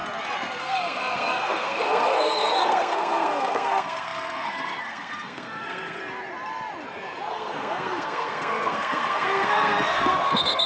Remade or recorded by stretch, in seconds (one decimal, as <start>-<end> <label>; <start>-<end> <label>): 0.0-0.6 recorded; 0.6-6.0 remade; 6.0-7.3 recorded; 7.3-10.7 remade